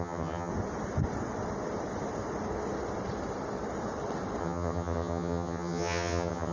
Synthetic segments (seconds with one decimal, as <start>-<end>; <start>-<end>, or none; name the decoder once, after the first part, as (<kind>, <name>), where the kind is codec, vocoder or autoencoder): 0.0-0.5 (vocoder, HiFi-GAN); 4.4-6.5